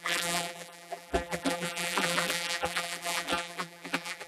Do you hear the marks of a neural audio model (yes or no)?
yes